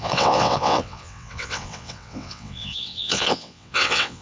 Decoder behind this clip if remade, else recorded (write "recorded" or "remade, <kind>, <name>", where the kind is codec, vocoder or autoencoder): remade, vocoder, WaveNeXt